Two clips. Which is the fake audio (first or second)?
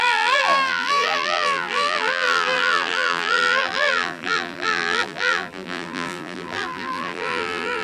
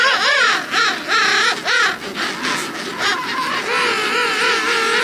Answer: first